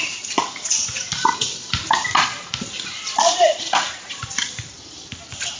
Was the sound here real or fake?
fake